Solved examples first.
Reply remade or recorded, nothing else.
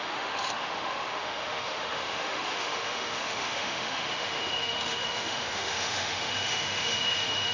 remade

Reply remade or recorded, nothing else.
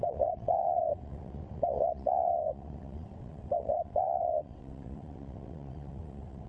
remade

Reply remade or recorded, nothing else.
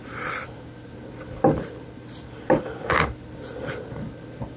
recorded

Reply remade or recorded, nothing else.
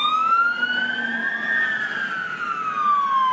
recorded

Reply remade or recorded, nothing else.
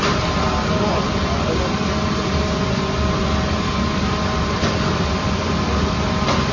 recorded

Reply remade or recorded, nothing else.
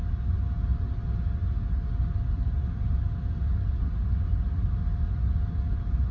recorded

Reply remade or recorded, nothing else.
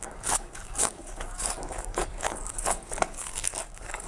remade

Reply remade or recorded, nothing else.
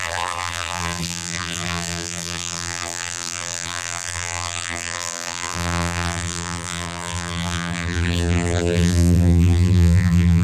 remade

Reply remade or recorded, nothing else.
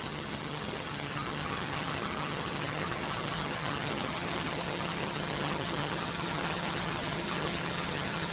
remade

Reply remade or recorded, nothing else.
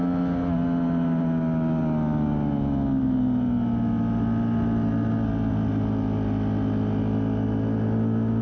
recorded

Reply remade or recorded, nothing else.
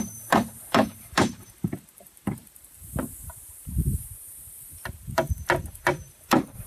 remade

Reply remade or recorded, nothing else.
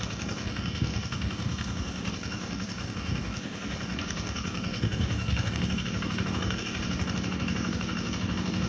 remade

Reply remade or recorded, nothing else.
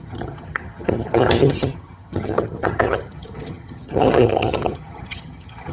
remade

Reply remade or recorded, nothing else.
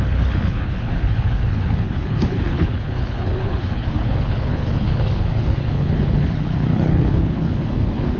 remade